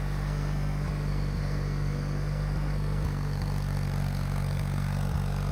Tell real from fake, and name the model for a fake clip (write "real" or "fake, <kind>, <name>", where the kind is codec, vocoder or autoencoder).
fake, codec, SNAC